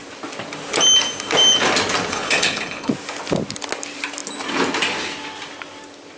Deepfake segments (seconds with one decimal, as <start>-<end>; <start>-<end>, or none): 2.1-2.9